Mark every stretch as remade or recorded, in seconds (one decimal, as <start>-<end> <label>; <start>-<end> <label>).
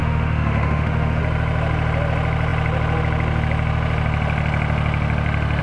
0.0-1.2 remade; 1.2-5.6 recorded